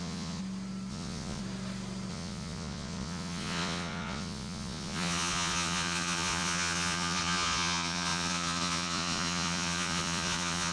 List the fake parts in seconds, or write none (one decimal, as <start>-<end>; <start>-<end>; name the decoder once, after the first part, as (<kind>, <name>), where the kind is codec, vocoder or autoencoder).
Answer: 0.0-0.4 (vocoder, Vocos); 0.9-1.4; 2.1-10.7